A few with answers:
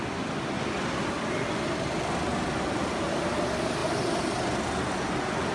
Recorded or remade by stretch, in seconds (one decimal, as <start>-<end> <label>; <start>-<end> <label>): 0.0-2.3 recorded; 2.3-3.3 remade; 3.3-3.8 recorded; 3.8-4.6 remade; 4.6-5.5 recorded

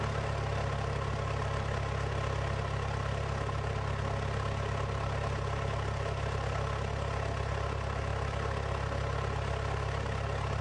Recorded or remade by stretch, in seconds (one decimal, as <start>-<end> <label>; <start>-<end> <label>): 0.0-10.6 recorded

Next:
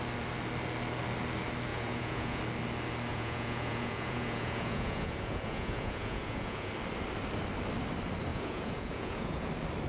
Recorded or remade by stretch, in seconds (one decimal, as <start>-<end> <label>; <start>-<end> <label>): 0.0-1.7 recorded; 1.7-2.4 remade; 2.4-3.1 recorded; 3.1-6.7 remade; 6.7-8.3 recorded; 8.3-9.5 remade; 9.5-9.9 recorded